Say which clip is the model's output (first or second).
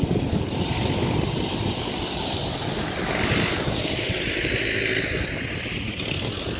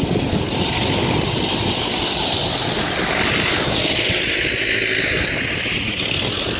first